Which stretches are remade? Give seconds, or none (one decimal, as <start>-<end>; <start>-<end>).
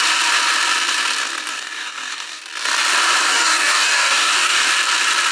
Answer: 1.5-2.4; 3.3-4.7